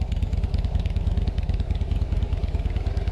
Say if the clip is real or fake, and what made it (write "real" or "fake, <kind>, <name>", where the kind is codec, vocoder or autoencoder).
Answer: fake, codec, DAC